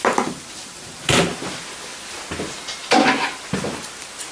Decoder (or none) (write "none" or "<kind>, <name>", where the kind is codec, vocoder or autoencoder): none